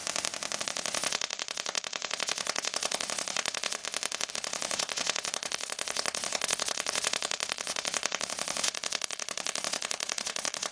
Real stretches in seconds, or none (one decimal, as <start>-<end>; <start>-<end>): 0.0-0.6; 3.8-4.3